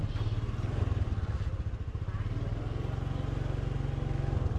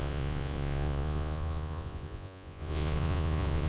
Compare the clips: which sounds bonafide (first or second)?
first